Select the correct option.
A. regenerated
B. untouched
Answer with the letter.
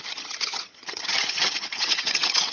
A